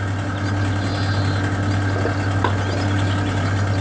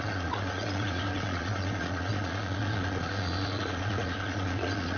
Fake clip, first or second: second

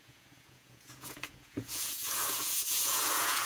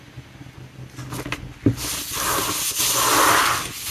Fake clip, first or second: first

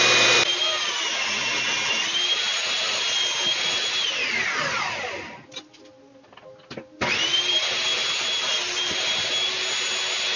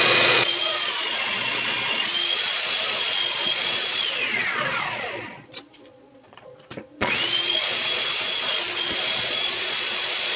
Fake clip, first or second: second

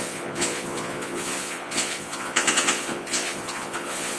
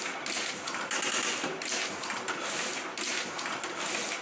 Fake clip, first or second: first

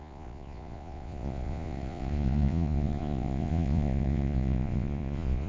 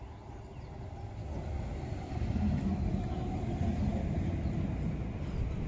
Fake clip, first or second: first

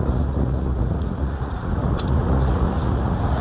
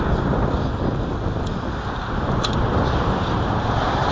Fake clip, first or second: first